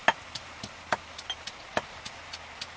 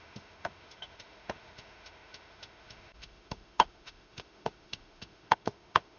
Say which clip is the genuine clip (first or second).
first